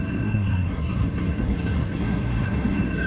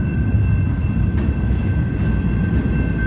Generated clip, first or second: first